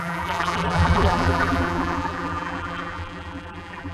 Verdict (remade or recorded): remade